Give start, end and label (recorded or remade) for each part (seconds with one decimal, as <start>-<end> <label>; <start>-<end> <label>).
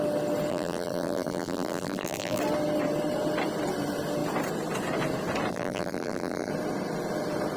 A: 0.0-0.5 recorded; 0.5-2.4 remade; 2.4-5.5 recorded; 5.5-6.5 remade; 6.5-7.6 recorded